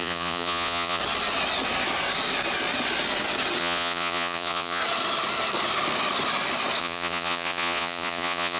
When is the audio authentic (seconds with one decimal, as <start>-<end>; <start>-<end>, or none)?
1.0-3.6; 4.8-6.8